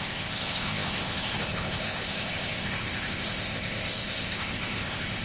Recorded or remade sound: remade